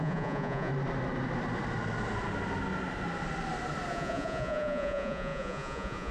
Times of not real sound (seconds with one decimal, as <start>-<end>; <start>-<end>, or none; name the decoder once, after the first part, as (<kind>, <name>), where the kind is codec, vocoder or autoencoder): 0.0-0.7 (vocoder, Vocos); 3.9-6.1